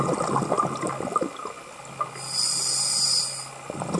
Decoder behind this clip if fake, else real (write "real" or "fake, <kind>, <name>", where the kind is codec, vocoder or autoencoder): real